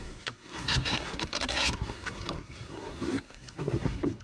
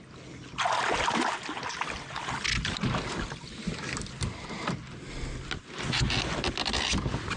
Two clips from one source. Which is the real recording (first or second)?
second